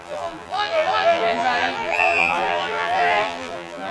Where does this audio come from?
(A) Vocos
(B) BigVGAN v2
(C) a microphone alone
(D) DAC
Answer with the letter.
B